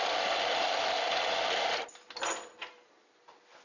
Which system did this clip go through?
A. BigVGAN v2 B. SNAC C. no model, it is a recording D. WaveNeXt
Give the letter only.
C